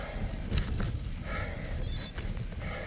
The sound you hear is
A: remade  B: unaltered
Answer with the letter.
B